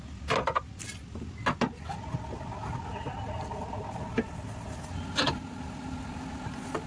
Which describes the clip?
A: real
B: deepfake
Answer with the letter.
A